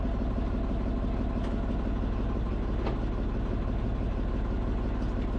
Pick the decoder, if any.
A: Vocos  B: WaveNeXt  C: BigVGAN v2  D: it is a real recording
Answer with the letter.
D